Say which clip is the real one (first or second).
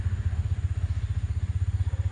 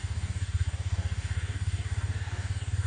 first